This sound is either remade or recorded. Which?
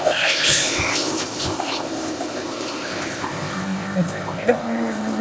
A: remade